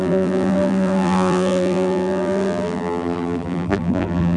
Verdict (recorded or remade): remade